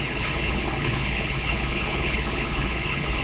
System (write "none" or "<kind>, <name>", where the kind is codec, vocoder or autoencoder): codec, HILCodec